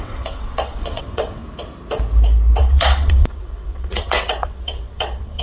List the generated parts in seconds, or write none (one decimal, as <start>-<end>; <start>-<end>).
0.0-1.4; 2.6-5.4